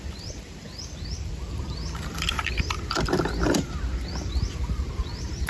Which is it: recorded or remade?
remade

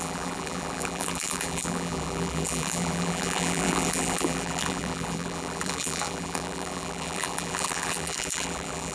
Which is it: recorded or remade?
remade